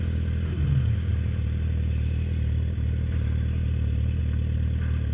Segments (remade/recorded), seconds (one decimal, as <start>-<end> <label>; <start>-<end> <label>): 0.0-1.1 recorded; 1.1-4.2 remade; 4.2-5.1 recorded

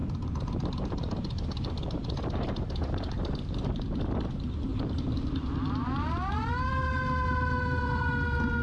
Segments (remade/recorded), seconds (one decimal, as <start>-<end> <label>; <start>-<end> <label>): 0.0-3.7 remade; 3.7-4.7 recorded; 4.7-6.7 remade; 6.7-8.6 recorded

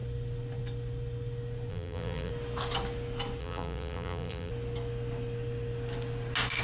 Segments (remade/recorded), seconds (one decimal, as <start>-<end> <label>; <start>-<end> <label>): 0.0-1.7 recorded; 1.7-2.3 remade; 2.3-3.4 recorded; 3.4-4.5 remade; 4.5-6.6 recorded

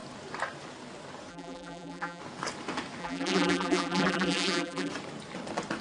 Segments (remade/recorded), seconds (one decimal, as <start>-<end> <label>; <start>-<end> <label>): 0.0-1.3 recorded; 1.3-2.2 remade; 2.2-3.0 recorded; 3.0-4.9 remade; 4.9-5.8 recorded

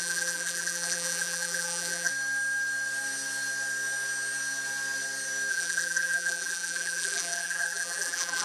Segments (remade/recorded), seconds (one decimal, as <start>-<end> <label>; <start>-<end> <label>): 0.0-2.1 remade; 2.1-5.5 recorded; 5.5-8.4 remade

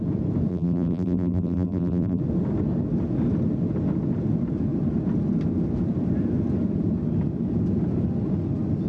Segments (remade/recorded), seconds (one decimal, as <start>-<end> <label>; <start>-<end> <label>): 0.0-0.5 recorded; 0.5-2.2 remade; 2.2-8.9 recorded

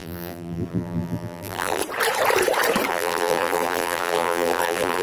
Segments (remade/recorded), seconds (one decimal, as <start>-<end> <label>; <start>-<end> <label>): 0.0-1.8 remade; 1.8-2.9 recorded; 2.9-5.0 remade